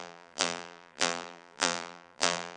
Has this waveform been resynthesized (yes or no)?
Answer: yes